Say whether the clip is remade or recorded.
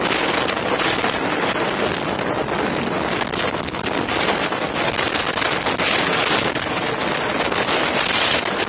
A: recorded